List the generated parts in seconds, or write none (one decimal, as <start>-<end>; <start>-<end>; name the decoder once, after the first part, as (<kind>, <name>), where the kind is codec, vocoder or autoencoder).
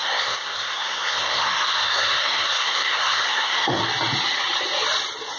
0.0-3.8 (codec, SNAC)